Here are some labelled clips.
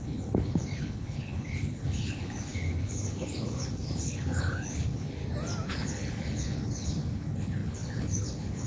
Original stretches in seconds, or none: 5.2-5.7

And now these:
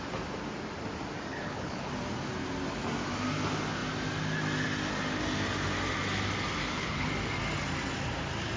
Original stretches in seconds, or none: 0.0-1.3; 1.9-6.6; 7.1-8.6

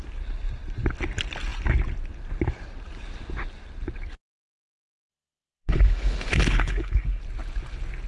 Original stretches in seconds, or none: 0.0-5.1; 7.2-8.1